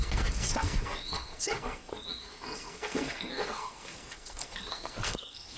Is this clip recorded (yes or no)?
no